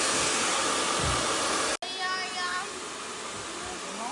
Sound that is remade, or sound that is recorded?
recorded